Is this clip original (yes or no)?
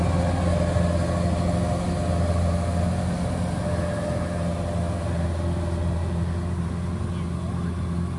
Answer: yes